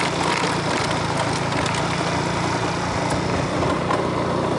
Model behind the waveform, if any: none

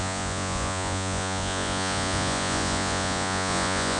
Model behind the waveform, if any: vocoder, Vocos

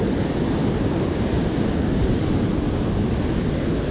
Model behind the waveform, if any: none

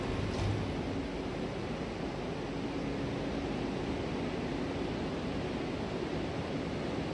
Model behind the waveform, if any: none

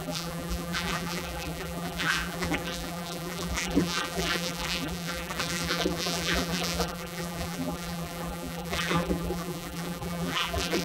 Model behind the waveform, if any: vocoder, BigVGAN v2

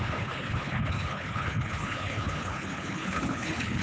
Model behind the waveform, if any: codec, HILCodec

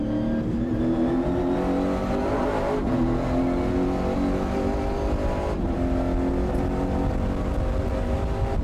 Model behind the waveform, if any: none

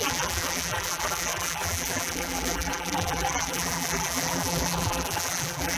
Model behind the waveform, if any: vocoder, BigVGAN v2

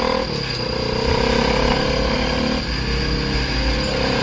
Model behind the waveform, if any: none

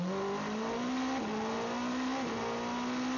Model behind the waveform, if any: none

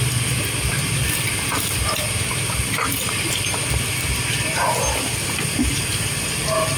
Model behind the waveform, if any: none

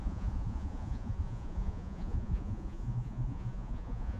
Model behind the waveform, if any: vocoder, Vocos